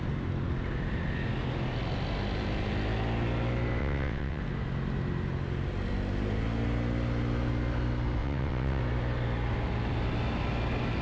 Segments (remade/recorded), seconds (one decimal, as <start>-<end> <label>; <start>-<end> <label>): 0.0-3.8 recorded; 3.8-4.4 remade; 4.4-8.2 recorded; 8.2-8.8 remade; 8.8-11.0 recorded

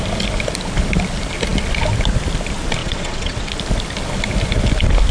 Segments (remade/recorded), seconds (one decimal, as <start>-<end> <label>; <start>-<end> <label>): 0.0-2.8 recorded; 2.8-3.5 remade; 3.5-5.1 recorded